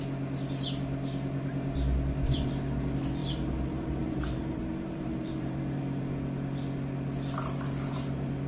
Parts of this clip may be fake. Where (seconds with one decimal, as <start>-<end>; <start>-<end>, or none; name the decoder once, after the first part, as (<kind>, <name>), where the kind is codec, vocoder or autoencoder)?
3.2-6.0 (vocoder, BigVGAN v2)